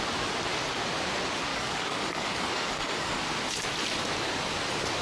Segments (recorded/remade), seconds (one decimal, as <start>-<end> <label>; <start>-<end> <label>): 0.0-1.5 recorded; 1.5-3.2 remade; 3.2-5.0 recorded